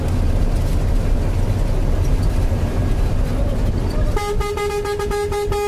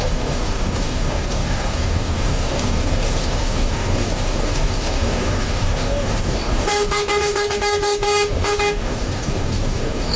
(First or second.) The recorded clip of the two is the first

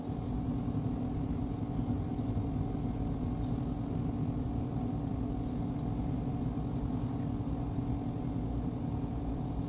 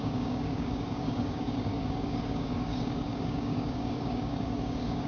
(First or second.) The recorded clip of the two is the first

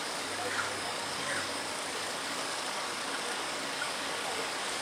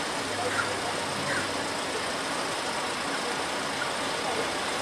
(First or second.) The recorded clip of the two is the second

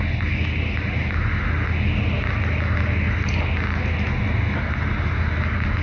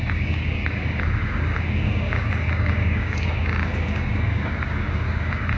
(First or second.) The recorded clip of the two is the first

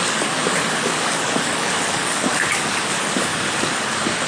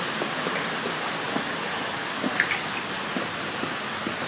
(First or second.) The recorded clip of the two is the second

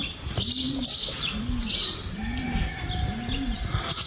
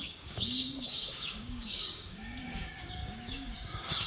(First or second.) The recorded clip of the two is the first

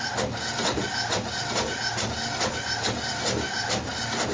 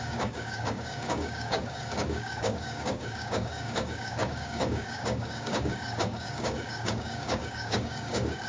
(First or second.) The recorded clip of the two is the first